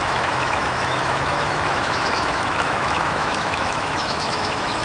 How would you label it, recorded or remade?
remade